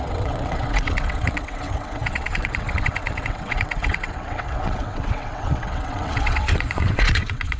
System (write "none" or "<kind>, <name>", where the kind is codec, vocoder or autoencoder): vocoder, WaveNeXt